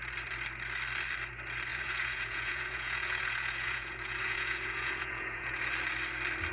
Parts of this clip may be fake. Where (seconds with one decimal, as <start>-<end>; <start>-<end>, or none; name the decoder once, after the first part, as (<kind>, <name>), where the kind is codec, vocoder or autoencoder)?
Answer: 1.7-5.6 (vocoder, Vocos)